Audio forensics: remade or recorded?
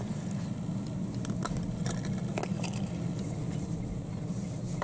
recorded